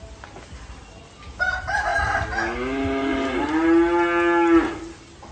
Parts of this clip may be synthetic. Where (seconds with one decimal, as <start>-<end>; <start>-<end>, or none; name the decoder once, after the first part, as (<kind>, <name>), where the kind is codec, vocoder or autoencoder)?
none